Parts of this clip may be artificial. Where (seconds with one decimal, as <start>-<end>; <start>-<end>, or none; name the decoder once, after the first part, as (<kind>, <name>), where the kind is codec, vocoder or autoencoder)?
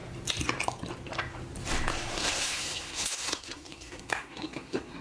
1.9-5.0 (codec, SNAC)